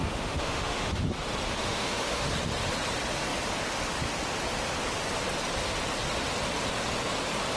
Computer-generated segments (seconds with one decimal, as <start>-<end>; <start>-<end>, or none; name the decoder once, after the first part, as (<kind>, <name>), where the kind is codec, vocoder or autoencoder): 0.0-1.1 (autoencoder, DAC-VAE); 1.6-2.3